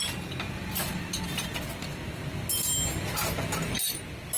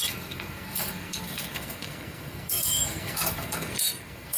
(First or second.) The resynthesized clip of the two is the second